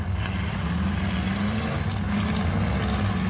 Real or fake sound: real